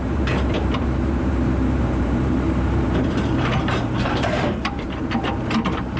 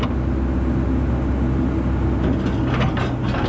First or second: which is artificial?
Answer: first